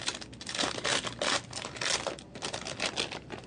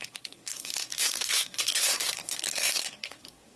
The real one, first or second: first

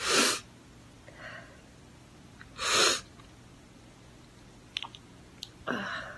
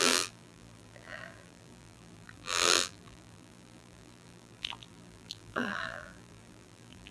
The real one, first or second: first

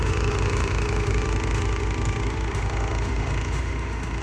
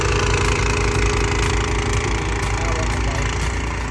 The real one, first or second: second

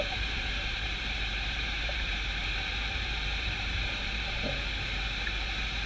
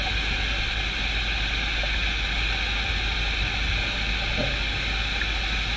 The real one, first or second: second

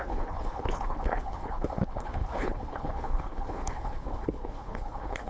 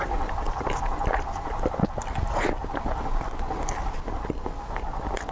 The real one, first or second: second